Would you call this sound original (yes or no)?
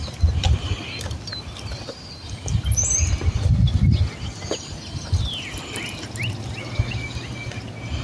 yes